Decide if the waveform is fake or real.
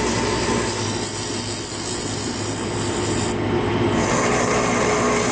real